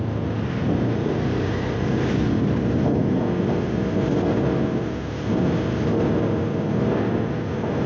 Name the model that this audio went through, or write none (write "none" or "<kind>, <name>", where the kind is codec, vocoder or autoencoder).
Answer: none